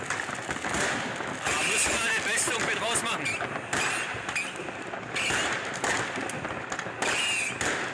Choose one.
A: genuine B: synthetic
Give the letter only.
A